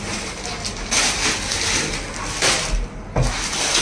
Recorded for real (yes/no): yes